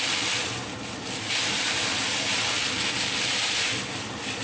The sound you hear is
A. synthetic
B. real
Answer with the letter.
B